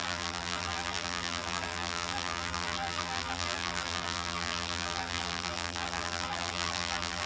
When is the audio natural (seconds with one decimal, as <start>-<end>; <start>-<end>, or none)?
none